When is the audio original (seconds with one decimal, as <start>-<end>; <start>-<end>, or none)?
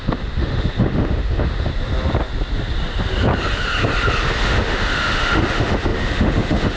1.7-4.4